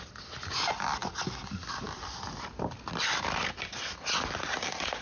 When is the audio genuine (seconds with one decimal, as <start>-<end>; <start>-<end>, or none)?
0.0-5.0